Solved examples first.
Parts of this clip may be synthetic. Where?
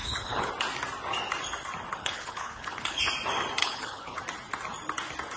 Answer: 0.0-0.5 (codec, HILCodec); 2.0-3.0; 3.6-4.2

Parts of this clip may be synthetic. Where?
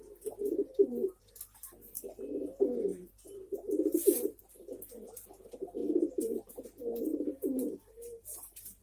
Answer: 0.6-1.2 (vocoder, BigVGAN v2); 2.9-4.4; 5.8-6.5; 7.1-8.8